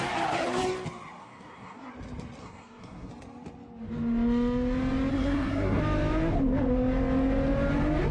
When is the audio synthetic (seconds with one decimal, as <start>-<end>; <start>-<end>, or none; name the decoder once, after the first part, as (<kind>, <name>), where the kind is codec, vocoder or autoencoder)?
1.2-1.9 (codec, SNAC); 2.4-3.1; 5.1-5.8